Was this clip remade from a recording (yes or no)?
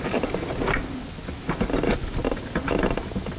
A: no